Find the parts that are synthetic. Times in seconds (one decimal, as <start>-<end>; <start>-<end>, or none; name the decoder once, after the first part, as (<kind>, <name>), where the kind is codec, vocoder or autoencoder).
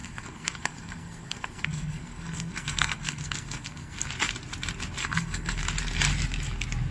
0.0-4.1 (codec, SNAC); 5.0-5.6